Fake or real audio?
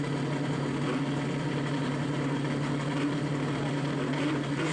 real